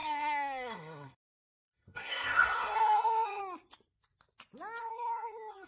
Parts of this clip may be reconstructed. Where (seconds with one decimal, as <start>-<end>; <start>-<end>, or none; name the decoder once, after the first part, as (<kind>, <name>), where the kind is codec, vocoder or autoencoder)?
0.0-3.4 (codec, SNAC); 4.8-5.7